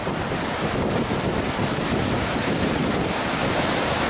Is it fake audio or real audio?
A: real